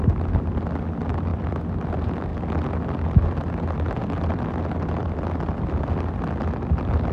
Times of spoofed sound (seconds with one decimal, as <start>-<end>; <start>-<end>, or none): 1.3-1.9

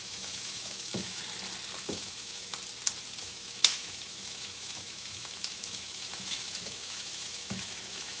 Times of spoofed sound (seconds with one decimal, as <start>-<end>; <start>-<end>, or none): 0.0-1.2; 1.8-2.5; 3.2-8.2

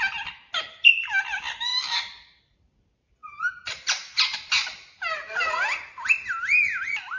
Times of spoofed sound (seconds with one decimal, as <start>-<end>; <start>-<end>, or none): none